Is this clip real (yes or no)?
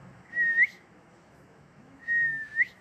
no